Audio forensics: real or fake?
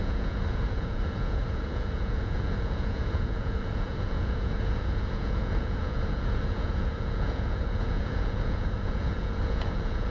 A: fake